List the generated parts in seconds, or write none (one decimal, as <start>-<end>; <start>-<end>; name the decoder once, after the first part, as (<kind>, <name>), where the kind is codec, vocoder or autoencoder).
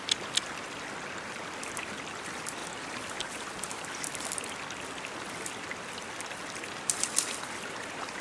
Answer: none